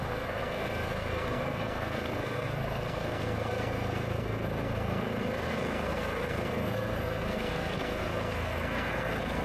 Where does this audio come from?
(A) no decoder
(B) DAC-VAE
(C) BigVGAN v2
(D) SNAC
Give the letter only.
D